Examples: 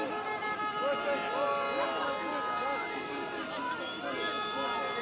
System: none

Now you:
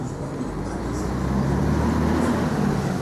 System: none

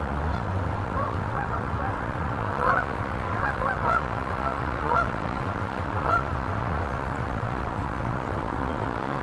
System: vocoder, WaveNeXt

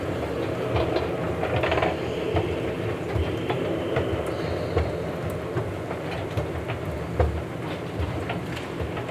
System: none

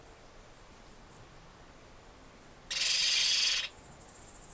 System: none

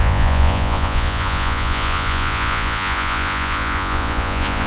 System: vocoder, Vocos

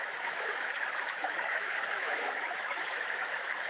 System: autoencoder, DAC-VAE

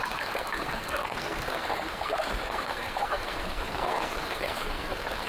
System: codec, SNAC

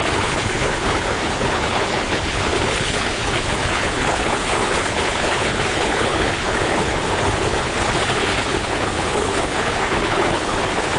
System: codec, HILCodec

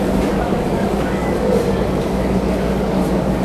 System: codec, DAC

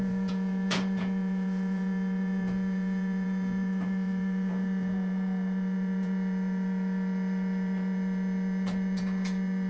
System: vocoder, Vocos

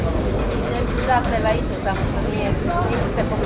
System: none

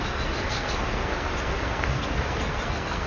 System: codec, SNAC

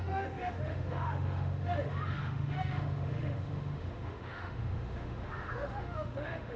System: autoencoder, DAC-VAE